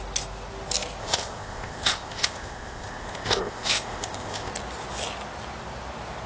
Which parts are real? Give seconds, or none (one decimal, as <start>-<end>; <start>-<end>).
0.0-1.0; 4.5-6.3